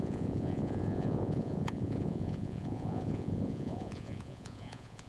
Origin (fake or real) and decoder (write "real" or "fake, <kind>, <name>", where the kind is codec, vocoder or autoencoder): fake, vocoder, Vocos